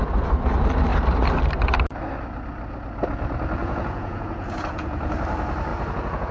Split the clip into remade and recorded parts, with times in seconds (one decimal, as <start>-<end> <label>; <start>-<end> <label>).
0.0-3.6 recorded; 3.6-5.1 remade; 5.1-5.7 recorded; 5.7-6.3 remade

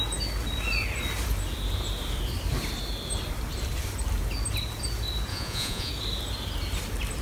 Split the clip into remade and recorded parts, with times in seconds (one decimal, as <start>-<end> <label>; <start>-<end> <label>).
0.0-5.3 recorded; 5.3-5.9 remade; 5.9-7.2 recorded

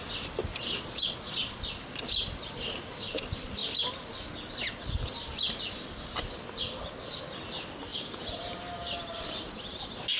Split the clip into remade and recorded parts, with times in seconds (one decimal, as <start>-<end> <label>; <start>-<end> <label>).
0.0-0.5 recorded; 0.5-1.6 remade; 1.6-10.2 recorded

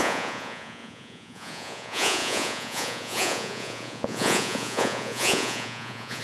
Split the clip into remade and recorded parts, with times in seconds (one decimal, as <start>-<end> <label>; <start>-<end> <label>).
0.0-6.2 remade

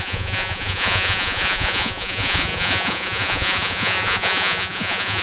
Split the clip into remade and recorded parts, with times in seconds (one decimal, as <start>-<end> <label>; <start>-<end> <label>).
0.0-5.2 remade

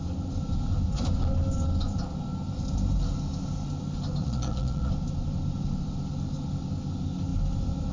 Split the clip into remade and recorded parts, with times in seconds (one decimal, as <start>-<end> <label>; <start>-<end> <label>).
0.0-4.2 recorded; 4.2-4.9 remade; 4.9-7.9 recorded

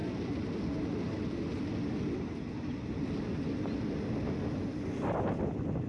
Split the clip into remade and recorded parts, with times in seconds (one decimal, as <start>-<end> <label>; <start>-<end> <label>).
0.0-5.9 recorded